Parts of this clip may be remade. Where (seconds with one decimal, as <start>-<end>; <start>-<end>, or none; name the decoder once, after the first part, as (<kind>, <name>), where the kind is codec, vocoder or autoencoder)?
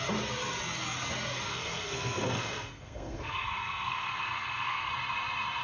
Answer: 1.5-4.9 (codec, SNAC)